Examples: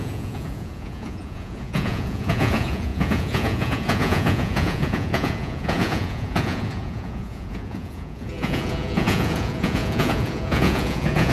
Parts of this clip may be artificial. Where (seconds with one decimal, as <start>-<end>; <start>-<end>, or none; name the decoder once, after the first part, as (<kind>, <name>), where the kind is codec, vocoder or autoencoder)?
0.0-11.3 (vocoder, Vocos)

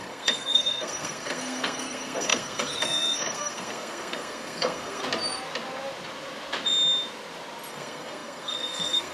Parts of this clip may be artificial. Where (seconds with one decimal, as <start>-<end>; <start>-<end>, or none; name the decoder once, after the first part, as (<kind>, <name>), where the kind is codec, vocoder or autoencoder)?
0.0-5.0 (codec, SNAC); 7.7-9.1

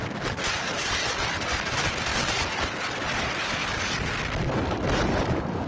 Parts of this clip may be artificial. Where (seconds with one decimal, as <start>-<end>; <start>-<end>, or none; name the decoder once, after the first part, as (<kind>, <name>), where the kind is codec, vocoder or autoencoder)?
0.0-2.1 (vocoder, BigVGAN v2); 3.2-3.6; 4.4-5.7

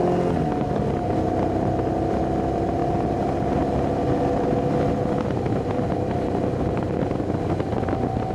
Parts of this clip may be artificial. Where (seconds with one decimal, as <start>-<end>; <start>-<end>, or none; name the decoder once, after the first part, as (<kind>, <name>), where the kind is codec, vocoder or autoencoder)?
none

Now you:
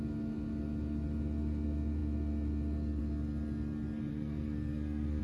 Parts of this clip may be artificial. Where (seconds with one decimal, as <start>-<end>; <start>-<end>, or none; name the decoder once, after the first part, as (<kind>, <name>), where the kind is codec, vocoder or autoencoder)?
4.1-5.2 (codec, SNAC)